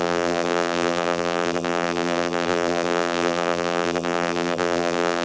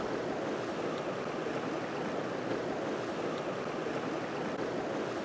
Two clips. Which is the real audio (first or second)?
second